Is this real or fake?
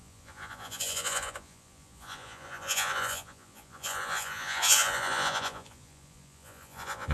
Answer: fake